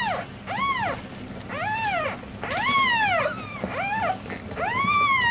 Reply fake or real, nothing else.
real